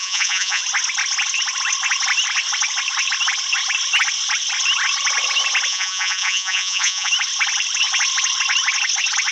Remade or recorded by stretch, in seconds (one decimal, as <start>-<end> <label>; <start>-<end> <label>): 0.0-0.6 remade; 0.6-5.7 recorded; 5.7-7.1 remade; 7.1-9.3 recorded